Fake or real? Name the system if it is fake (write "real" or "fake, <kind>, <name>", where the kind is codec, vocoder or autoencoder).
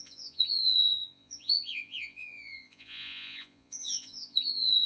fake, vocoder, Vocos